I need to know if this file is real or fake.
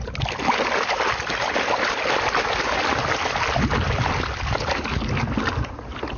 real